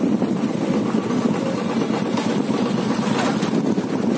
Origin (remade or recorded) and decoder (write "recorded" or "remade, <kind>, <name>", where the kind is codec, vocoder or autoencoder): recorded